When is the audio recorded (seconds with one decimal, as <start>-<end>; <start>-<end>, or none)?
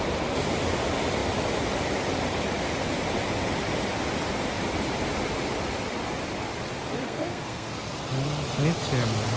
0.0-7.0; 7.7-9.4